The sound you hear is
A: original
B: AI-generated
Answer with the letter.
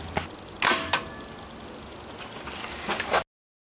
A